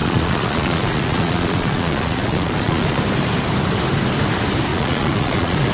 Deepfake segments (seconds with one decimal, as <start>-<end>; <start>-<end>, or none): 0.0-3.0; 4.7-5.7